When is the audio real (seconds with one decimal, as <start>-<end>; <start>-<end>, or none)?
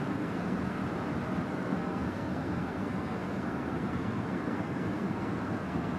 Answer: 0.8-1.5